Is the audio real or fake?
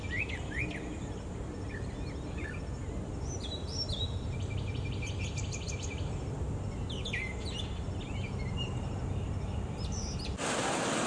real